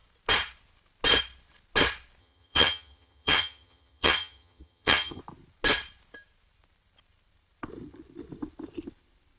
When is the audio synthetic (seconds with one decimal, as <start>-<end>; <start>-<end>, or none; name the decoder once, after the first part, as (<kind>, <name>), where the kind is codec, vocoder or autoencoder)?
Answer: 2.2-5.2 (vocoder, HiFi-GAN)